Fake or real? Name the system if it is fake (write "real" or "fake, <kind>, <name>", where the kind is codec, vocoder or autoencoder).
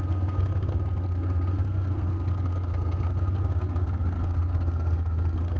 fake, codec, SNAC